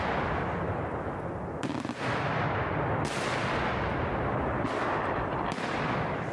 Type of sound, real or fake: real